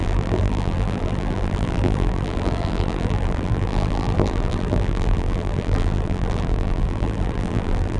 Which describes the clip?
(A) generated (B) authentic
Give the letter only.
A